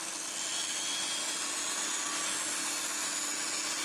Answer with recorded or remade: recorded